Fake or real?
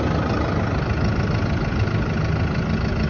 real